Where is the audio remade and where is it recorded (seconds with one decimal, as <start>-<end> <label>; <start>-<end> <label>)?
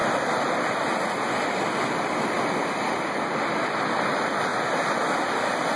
0.0-5.8 recorded